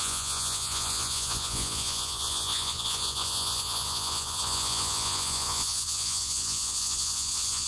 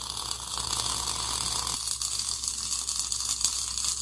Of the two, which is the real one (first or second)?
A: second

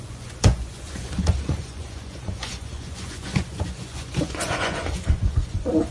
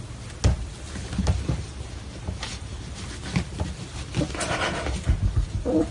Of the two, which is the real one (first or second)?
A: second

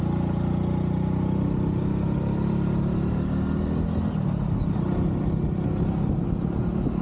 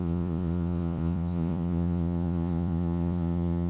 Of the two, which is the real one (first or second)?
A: first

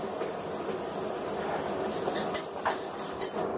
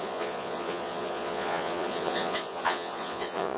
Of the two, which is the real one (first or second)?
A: first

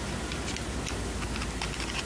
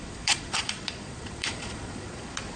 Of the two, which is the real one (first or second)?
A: first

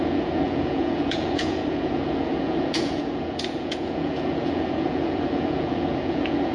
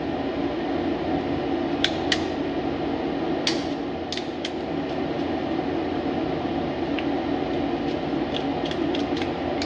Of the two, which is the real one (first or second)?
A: second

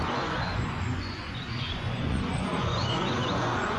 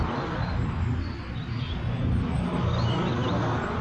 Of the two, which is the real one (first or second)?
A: second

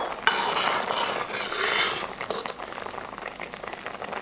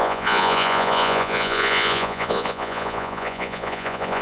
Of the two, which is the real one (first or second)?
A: first